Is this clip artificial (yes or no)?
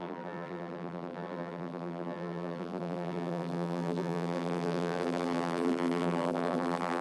yes